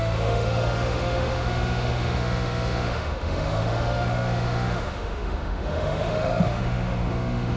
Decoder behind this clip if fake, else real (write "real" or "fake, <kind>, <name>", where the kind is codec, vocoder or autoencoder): fake, autoencoder, DAC-VAE